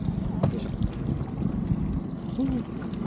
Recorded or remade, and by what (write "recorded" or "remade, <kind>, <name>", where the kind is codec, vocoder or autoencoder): recorded